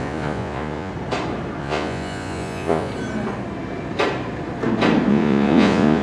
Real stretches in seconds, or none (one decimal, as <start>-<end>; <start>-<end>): 0.9-1.6; 2.9-5.1